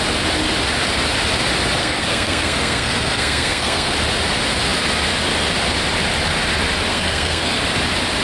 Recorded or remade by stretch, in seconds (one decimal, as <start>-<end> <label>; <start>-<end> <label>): 0.0-1.8 recorded; 1.8-3.9 remade; 3.9-6.9 recorded; 6.9-7.6 remade; 7.6-8.2 recorded